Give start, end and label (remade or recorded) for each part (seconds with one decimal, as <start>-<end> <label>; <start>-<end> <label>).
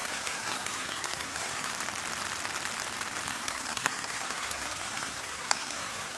0.0-1.7 remade; 1.7-3.3 recorded; 3.3-6.2 remade